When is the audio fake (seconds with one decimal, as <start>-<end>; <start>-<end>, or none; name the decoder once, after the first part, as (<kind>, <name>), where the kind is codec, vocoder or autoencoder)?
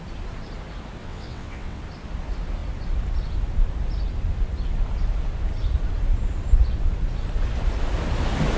1.0-1.8 (vocoder, WaveNeXt)